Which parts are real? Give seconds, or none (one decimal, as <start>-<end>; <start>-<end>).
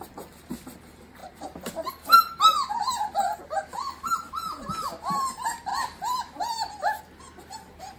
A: 0.0-8.0